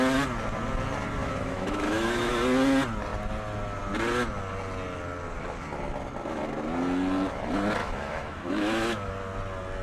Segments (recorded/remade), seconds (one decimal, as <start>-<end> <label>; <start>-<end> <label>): 0.0-1.2 recorded; 1.2-2.3 remade; 2.3-7.8 recorded; 7.8-9.1 remade; 9.1-9.8 recorded